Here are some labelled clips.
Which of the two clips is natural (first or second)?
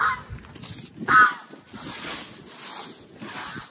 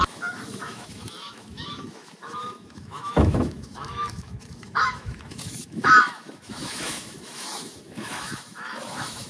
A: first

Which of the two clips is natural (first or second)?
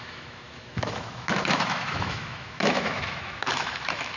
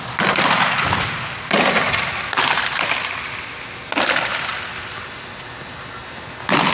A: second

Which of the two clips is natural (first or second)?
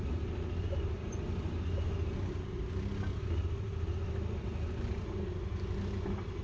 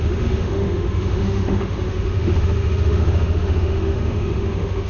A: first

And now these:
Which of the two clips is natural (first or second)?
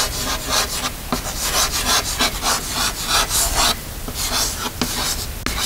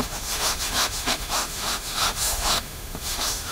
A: first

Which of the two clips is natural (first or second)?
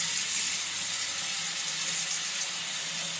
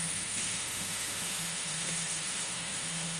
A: first